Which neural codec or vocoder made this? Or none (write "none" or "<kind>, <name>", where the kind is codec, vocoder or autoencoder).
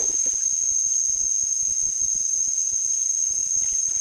none